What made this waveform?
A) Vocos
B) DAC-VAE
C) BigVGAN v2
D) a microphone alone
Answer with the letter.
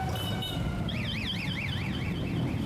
C